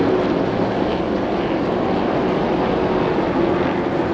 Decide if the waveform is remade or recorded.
recorded